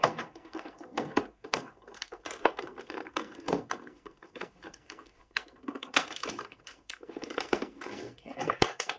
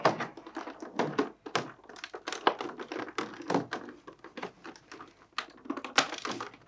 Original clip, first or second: second